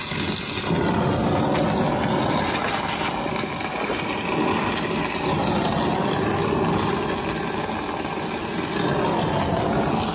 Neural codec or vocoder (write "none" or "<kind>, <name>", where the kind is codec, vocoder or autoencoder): none